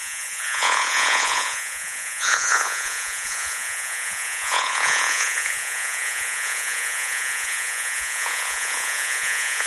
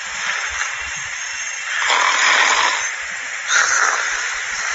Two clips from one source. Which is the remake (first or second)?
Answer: first